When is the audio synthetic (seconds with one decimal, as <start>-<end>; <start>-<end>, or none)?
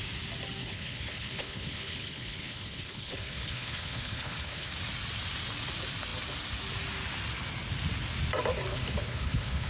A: 0.6-4.7; 8.7-9.7